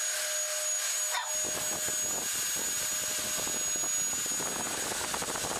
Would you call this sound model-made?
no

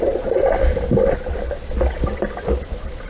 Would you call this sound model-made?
no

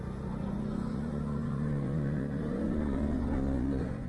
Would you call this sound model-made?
yes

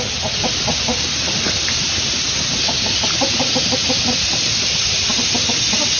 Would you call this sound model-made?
no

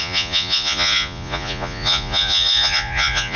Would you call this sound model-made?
yes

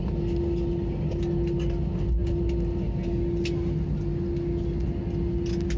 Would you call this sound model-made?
no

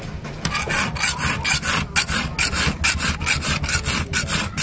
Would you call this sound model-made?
no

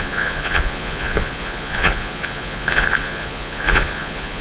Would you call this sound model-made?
yes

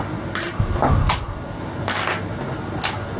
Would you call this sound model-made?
no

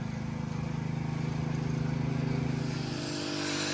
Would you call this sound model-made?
no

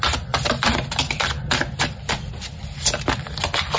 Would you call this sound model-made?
no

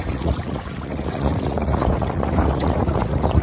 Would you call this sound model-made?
yes